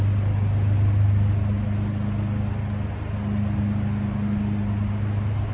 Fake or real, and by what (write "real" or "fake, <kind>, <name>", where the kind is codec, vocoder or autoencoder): real